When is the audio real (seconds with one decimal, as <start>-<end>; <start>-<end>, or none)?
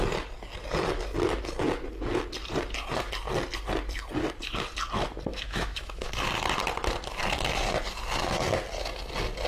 0.0-5.3; 6.1-9.5